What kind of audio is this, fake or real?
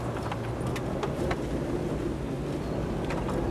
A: real